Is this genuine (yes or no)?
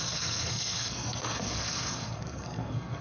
no